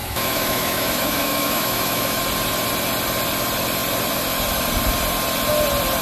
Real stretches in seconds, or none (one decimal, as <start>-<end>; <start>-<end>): 2.2-6.0